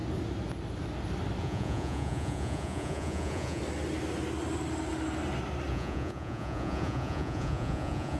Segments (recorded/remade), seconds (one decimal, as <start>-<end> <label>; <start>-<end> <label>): 0.0-1.4 recorded; 1.4-3.6 remade; 3.6-5.7 recorded; 5.7-8.2 remade